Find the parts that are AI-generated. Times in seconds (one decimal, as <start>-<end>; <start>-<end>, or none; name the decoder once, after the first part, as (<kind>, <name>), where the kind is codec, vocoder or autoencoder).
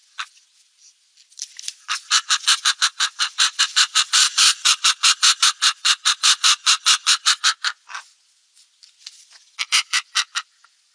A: none